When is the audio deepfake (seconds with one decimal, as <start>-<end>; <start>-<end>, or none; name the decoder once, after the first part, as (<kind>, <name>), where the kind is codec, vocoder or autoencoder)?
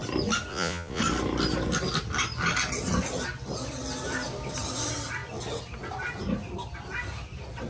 0.5-1.0 (vocoder, Vocos)